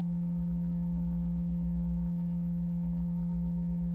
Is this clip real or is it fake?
fake